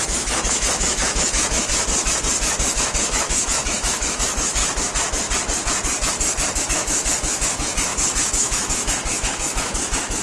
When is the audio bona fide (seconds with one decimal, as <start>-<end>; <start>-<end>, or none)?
1.7-2.7; 4.6-6.6